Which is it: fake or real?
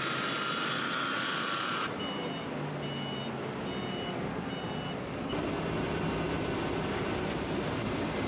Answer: real